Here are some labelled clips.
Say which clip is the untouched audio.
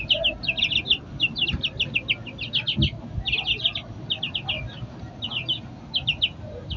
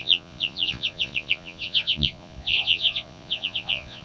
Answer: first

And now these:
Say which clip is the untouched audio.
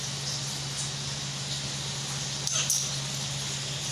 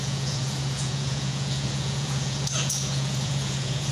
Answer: first